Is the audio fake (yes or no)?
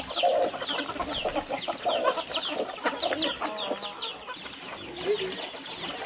no